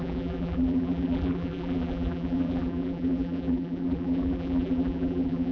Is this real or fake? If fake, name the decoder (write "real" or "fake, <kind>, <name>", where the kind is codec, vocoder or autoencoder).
fake, vocoder, BigVGAN v2